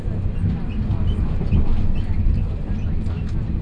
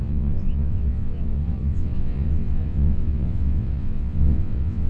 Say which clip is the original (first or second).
first